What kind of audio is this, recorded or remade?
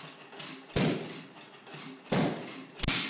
recorded